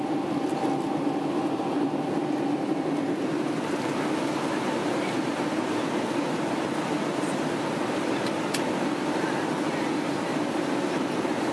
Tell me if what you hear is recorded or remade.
recorded